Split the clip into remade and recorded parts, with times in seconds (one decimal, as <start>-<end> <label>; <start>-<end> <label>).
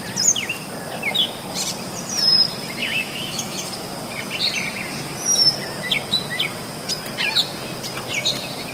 0.0-2.8 recorded; 2.8-3.7 remade; 3.7-8.7 recorded